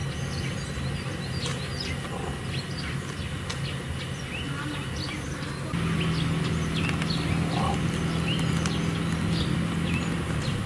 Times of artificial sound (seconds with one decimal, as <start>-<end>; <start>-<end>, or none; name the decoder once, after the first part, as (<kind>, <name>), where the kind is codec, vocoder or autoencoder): none